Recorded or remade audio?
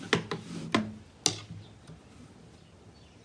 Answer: recorded